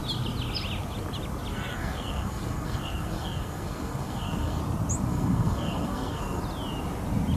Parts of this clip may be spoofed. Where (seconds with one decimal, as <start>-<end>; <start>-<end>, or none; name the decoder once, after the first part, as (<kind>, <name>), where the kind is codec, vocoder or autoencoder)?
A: 1.5-4.6 (codec, SNAC); 5.1-6.4